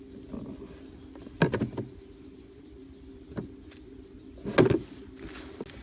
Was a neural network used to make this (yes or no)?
no